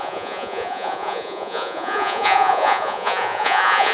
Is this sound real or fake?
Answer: fake